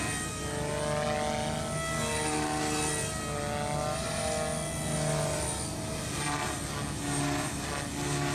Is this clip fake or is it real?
real